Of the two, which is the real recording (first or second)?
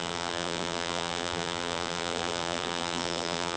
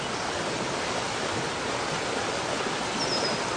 second